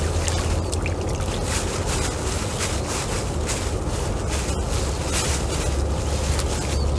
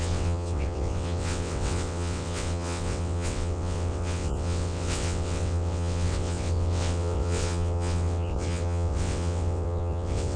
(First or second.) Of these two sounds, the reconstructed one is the second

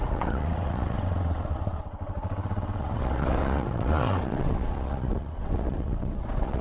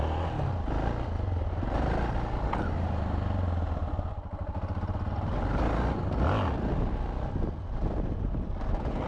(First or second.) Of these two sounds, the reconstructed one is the first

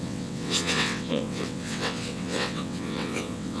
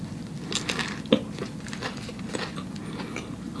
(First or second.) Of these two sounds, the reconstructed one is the first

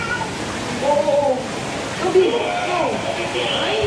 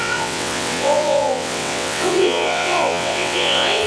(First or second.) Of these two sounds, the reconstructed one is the second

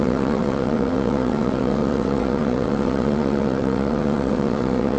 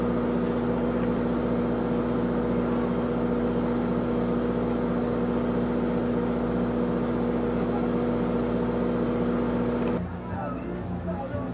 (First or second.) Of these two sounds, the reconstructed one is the first